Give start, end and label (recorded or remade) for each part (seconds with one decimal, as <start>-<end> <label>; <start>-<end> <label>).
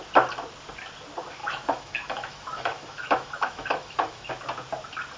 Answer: 0.0-1.4 recorded; 1.4-4.3 remade; 4.3-5.2 recorded